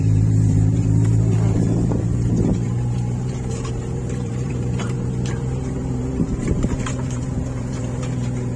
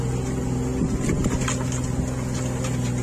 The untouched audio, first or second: second